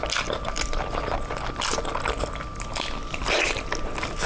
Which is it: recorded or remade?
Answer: recorded